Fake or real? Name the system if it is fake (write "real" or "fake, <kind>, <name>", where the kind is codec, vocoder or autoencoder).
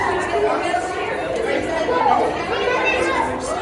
real